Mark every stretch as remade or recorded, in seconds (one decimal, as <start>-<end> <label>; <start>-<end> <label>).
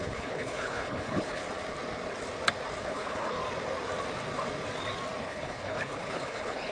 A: 0.0-1.4 remade; 1.4-2.8 recorded; 2.8-3.4 remade; 3.4-5.2 recorded; 5.2-6.7 remade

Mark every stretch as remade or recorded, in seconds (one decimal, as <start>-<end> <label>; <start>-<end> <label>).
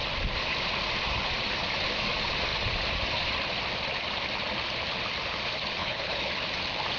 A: 0.0-5.8 recorded; 5.8-6.3 remade; 6.3-7.0 recorded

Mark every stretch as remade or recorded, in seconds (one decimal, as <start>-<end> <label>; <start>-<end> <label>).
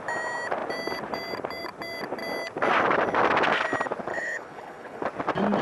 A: 0.0-4.1 recorded; 4.1-5.0 remade; 5.0-5.6 recorded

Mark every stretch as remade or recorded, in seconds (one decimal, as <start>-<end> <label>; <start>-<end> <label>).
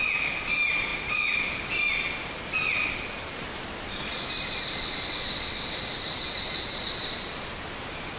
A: 0.0-8.2 recorded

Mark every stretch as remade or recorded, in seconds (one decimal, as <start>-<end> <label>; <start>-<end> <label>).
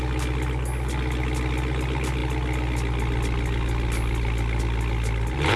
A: 0.0-5.6 recorded